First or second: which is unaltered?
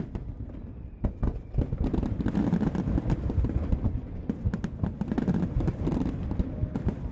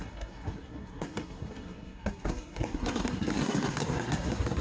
first